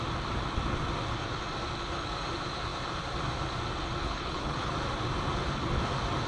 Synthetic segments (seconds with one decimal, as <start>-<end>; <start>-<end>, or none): 4.0-4.7